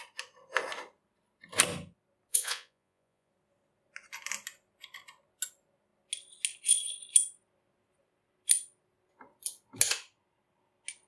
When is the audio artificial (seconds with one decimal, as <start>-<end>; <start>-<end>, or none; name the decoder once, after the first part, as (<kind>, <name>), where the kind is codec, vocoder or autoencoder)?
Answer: 2.3-3.3 (vocoder, Vocos)